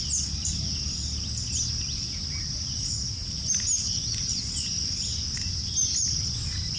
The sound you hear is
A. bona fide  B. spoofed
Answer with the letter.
A